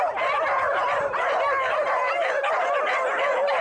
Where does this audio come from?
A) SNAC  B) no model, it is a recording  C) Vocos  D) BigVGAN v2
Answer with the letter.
B